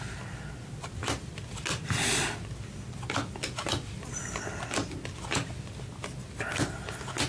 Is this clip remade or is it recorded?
recorded